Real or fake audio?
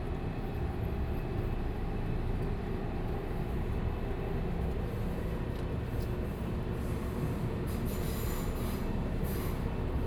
real